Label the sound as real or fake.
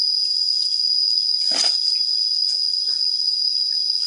real